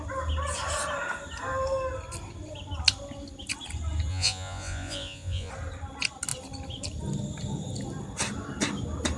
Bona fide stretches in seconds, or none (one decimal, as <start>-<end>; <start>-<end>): 0.0-4.1; 5.5-9.2